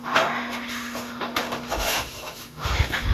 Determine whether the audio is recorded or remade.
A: remade